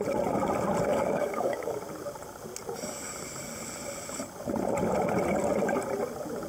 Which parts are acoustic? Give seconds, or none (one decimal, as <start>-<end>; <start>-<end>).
0.0-0.9; 1.8-6.5